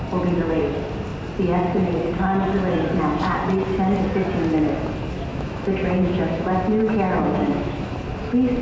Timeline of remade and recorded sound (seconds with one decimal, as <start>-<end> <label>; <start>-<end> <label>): 0.0-5.3 recorded; 5.3-6.5 remade; 6.5-6.9 recorded; 6.9-8.0 remade; 8.0-8.6 recorded